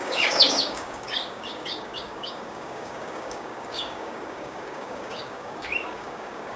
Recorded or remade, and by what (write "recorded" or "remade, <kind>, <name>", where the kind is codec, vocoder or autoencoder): remade, codec, DAC